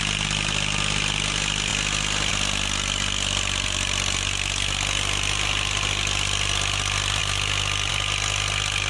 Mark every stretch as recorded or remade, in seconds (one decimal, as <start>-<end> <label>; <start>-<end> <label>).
0.0-8.9 recorded